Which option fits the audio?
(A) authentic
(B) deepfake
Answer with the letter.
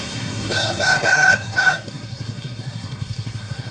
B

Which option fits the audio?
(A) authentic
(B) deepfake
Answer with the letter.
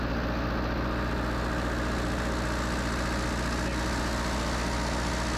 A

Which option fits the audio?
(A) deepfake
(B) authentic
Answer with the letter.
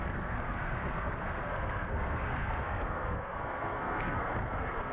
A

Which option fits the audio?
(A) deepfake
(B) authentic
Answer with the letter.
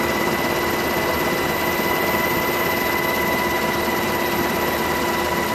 B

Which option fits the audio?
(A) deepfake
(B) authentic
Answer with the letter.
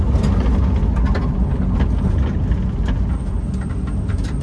B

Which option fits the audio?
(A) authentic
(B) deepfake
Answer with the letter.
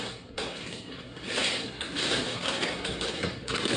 B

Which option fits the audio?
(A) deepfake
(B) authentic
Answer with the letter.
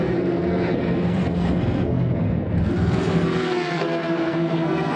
A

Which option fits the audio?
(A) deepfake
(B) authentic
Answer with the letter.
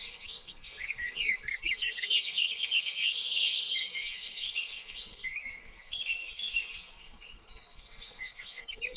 A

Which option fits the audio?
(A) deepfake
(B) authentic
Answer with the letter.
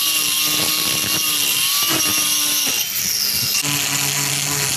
B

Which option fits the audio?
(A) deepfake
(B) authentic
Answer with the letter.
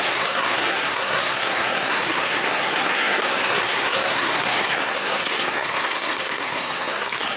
A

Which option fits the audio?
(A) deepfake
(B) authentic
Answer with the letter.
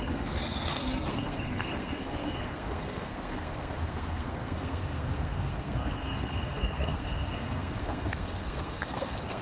A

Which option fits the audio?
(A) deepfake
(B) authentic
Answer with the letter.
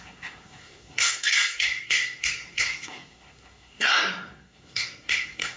A